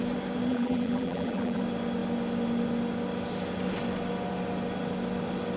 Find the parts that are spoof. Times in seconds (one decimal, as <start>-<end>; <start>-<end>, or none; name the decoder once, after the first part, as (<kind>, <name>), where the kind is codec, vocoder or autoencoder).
0.5-1.6 (vocoder, BigVGAN v2)